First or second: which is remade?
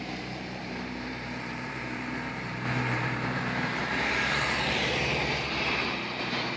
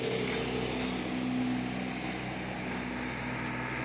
first